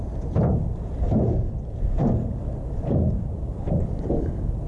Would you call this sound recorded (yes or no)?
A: yes